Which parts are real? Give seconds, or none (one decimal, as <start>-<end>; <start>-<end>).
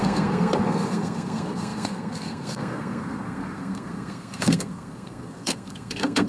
none